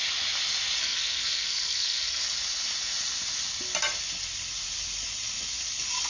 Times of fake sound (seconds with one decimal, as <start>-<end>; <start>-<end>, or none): 0.8-2.2